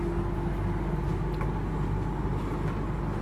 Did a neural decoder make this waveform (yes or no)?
no